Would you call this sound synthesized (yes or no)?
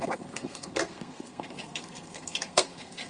yes